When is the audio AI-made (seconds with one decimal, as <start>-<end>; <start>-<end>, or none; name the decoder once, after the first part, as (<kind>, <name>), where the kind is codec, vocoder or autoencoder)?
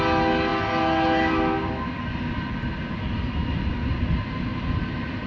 none